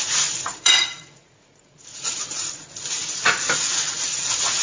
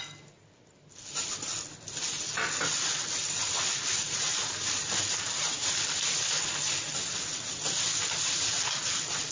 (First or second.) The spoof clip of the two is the first